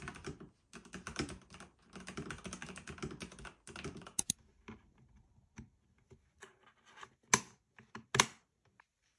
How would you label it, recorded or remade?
recorded